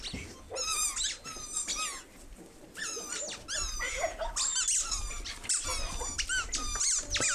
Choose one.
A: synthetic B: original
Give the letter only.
B